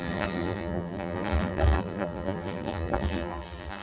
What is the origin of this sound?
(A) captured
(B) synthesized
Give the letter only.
B